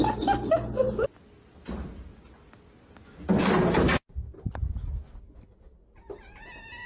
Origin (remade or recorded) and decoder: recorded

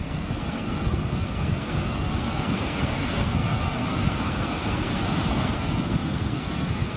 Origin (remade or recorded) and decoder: remade, codec, SNAC